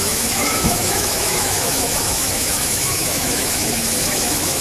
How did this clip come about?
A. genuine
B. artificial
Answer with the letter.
B